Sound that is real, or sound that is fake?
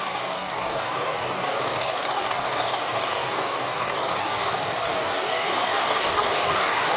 fake